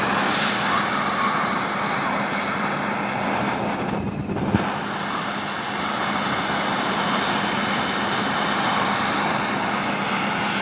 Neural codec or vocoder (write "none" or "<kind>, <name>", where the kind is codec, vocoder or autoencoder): none